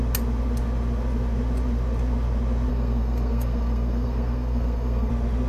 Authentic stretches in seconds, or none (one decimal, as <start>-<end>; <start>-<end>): 0.0-2.7; 5.1-5.5